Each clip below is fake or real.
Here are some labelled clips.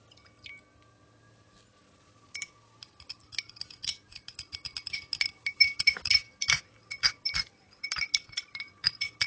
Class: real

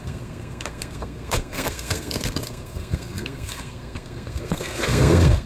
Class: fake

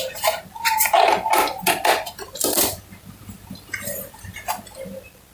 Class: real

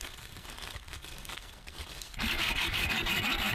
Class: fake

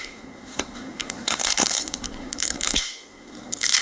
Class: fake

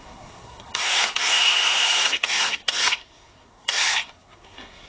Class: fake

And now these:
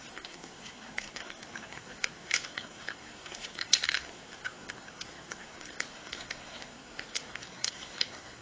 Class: fake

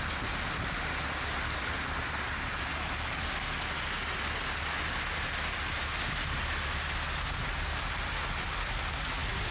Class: real